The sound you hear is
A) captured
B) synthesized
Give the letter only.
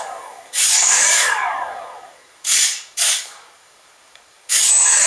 B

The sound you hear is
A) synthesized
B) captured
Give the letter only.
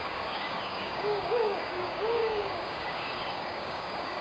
A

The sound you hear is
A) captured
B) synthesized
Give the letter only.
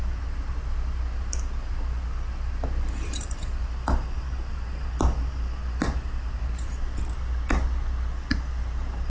A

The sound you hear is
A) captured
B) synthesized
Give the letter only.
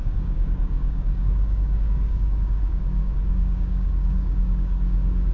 B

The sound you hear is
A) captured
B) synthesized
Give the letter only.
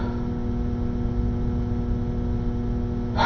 A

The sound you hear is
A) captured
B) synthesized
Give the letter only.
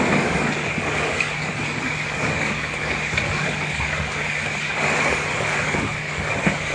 B